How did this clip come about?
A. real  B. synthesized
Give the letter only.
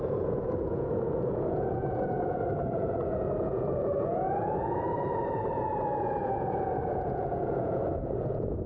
B